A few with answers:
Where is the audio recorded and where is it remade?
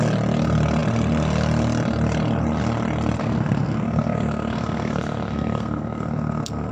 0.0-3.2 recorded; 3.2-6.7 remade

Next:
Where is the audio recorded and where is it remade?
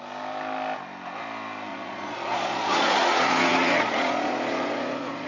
0.0-1.7 recorded; 1.7-5.3 remade